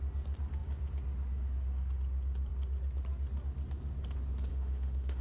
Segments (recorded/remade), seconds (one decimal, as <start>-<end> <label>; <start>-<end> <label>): 0.0-4.5 recorded; 4.5-5.2 remade